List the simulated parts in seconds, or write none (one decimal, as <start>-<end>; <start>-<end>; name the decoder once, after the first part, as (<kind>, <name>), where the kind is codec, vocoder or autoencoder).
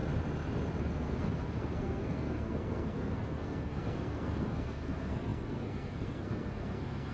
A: 0.8-7.1 (codec, SNAC)